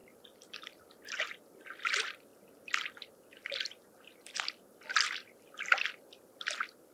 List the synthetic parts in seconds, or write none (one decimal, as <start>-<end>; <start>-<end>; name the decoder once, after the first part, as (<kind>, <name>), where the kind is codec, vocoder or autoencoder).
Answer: none